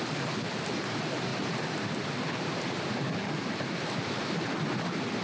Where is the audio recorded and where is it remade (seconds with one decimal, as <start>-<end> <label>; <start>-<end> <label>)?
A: 0.0-1.3 recorded; 1.3-4.4 remade; 4.4-5.2 recorded

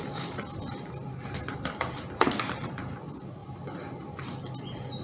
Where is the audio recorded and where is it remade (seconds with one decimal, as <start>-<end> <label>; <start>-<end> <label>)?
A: 0.0-5.0 remade

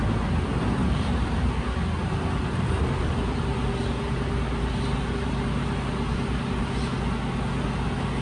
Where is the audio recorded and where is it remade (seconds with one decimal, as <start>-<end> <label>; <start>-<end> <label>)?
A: 0.0-0.8 recorded; 0.8-1.6 remade; 1.6-2.0 recorded; 2.0-6.9 remade; 6.9-8.2 recorded

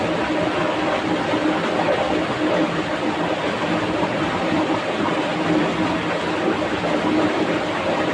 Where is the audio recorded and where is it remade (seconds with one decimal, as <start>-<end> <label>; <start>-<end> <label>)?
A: 0.0-4.0 recorded; 4.0-5.1 remade; 5.1-8.1 recorded

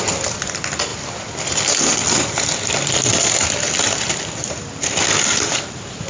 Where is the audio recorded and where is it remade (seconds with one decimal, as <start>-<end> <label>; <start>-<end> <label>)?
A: 0.0-0.9 recorded; 0.9-1.5 remade; 1.5-3.1 recorded; 3.1-5.0 remade; 5.0-6.1 recorded

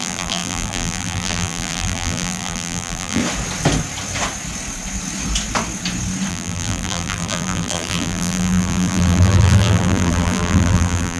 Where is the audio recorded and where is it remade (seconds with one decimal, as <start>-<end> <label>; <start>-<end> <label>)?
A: 0.0-3.2 remade; 3.2-6.3 recorded; 6.3-11.2 remade